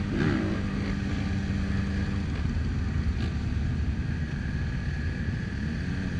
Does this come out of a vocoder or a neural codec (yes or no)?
no